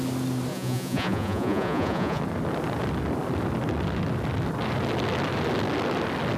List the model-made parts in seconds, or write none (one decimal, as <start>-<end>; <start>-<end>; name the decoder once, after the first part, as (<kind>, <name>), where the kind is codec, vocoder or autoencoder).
0.5-2.2 (vocoder, Vocos)